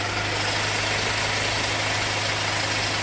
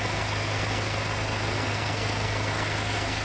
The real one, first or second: first